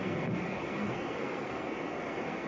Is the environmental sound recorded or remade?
remade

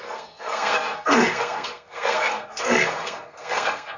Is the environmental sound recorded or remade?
remade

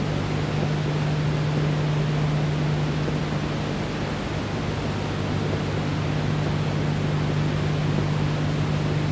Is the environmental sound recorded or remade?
recorded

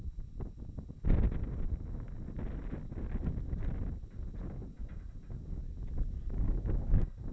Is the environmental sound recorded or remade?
recorded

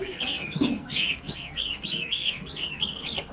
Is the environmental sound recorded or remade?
remade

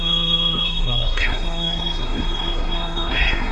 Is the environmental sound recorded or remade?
remade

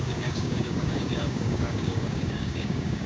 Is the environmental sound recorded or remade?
remade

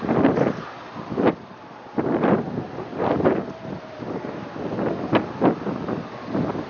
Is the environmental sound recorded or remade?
recorded